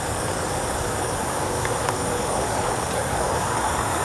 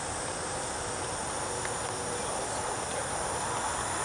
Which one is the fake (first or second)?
first